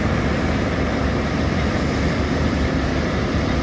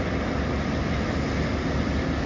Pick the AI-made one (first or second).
first